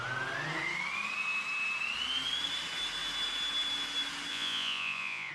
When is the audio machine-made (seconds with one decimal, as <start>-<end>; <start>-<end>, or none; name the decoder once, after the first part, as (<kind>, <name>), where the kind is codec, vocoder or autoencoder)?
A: 4.3-5.3 (vocoder, Vocos)